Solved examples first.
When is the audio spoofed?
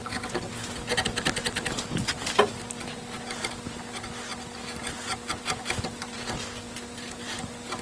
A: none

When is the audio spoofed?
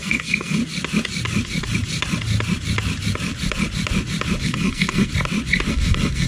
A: 0.0-0.6 (codec, SNAC); 4.4-5.1; 5.7-6.3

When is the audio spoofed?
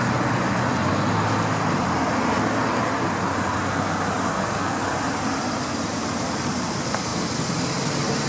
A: 4.3-4.8 (codec, SNAC)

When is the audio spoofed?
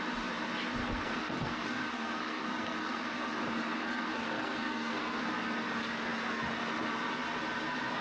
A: 0.8-3.4 (codec, SNAC); 3.8-5.2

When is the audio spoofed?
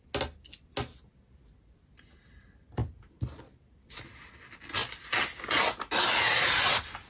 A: none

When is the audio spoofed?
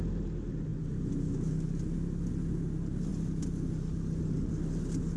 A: none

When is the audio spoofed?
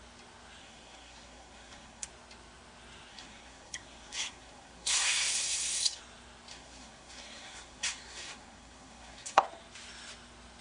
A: 0.6-2.1 (codec, SNAC); 3.1-6.0; 6.5-9.4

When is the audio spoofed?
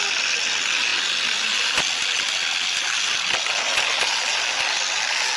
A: none